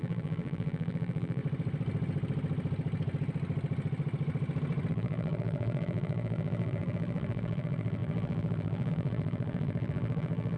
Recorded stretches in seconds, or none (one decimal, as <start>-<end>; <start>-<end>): 1.4-4.9